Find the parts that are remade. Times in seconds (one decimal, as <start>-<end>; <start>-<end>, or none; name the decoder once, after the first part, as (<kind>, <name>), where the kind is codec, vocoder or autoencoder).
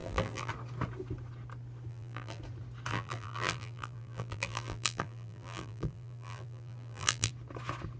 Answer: 0.0-0.5 (vocoder, BigVGAN v2); 1.9-2.4; 2.9-7.3